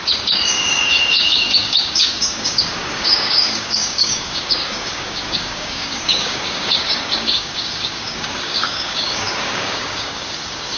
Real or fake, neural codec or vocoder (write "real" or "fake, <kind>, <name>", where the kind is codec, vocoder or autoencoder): fake, codec, DAC